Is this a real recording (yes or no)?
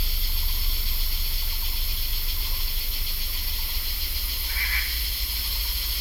yes